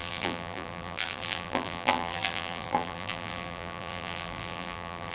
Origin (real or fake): fake